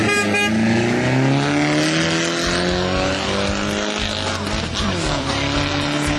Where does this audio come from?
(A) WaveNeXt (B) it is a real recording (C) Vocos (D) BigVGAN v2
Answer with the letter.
B